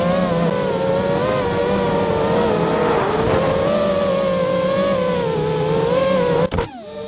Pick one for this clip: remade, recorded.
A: recorded